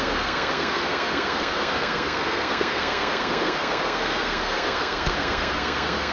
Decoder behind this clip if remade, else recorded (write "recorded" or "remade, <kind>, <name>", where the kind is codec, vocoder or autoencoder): remade, codec, SNAC